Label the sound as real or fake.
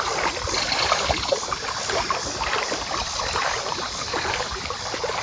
real